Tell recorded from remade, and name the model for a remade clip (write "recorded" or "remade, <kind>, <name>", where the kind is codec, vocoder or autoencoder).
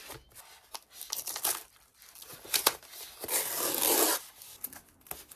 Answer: recorded